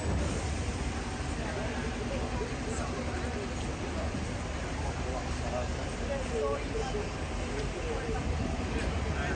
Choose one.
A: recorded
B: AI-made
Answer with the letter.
A